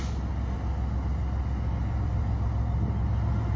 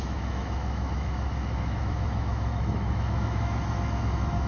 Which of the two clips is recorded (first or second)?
first